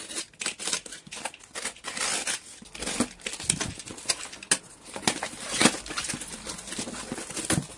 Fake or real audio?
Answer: real